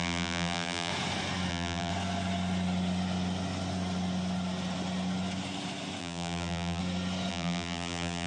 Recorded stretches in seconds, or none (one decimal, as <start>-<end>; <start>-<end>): 0.9-1.5; 1.9-6.0; 6.8-7.3